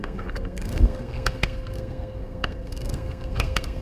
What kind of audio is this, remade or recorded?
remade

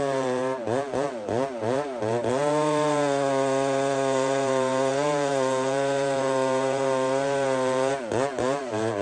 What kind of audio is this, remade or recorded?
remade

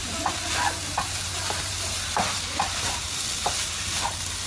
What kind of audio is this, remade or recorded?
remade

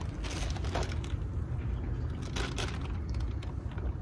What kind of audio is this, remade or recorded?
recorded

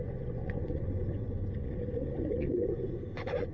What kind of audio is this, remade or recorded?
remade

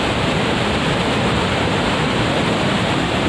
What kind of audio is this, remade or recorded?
remade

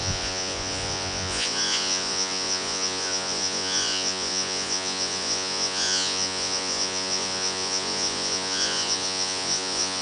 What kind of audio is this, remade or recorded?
remade